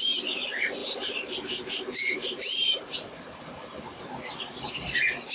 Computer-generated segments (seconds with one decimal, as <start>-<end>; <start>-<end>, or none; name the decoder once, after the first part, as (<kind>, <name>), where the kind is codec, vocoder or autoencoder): 0.8-4.0 (vocoder, BigVGAN v2)